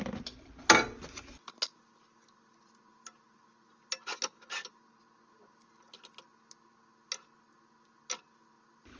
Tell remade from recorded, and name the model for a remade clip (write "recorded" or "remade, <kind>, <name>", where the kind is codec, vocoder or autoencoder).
recorded